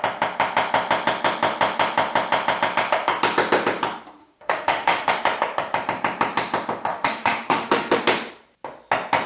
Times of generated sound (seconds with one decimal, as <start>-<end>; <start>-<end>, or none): 4.2-5.1; 6.9-8.0